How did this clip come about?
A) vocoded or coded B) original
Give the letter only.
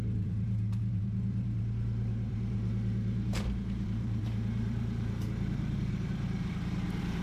A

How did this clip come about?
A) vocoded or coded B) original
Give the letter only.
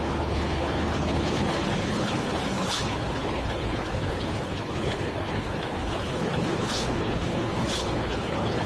A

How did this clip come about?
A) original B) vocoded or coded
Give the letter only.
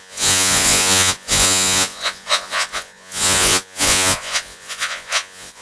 B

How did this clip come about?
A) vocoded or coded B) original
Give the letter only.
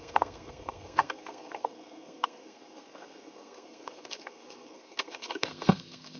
A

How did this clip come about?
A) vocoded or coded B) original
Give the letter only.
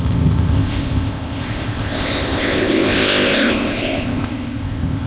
A